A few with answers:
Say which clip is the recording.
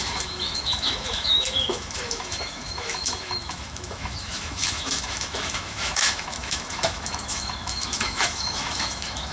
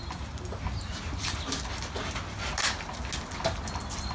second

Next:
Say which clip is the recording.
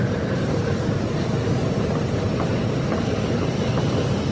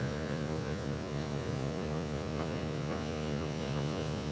first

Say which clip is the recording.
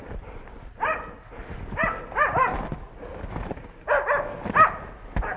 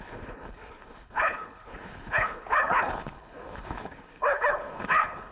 first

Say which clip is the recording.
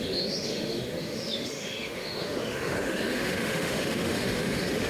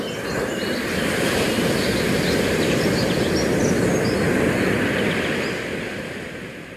second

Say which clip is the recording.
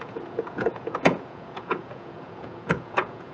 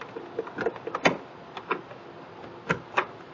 second